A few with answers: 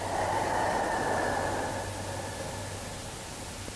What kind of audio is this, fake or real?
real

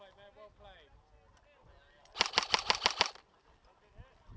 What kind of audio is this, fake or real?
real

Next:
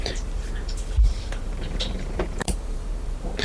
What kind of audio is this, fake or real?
fake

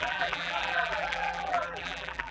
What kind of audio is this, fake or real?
fake